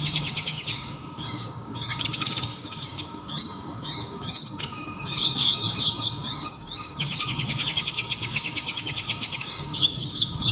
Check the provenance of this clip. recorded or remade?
remade